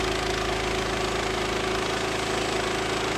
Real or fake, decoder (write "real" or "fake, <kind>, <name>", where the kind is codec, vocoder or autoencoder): real